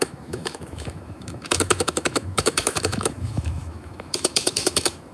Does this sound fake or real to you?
fake